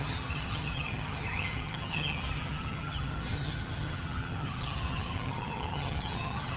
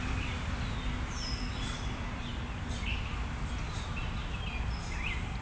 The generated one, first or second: first